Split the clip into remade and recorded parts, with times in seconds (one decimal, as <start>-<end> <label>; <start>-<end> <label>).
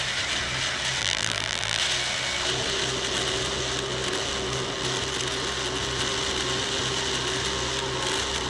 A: 0.0-1.0 recorded; 1.0-1.8 remade; 1.8-8.5 recorded